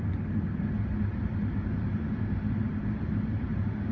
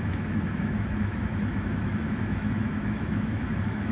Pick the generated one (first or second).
second